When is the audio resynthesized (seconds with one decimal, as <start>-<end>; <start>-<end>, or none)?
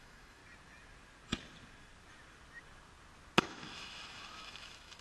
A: 0.0-0.4; 3.4-5.0